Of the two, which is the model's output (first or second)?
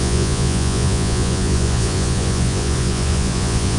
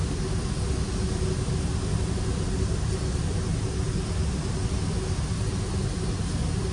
first